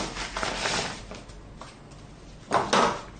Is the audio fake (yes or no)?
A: no